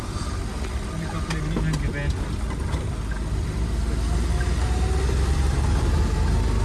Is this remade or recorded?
recorded